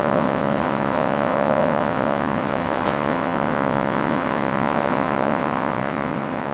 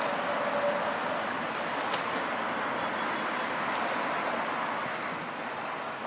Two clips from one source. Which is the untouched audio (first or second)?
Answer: second